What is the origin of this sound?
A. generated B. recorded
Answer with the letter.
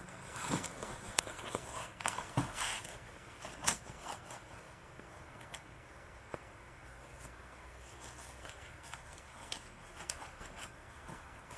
A